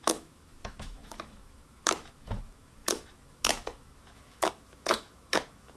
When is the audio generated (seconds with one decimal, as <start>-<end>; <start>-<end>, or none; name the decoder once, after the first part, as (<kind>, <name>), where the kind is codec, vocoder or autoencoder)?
0.0-5.8 (autoencoder, DAC-VAE)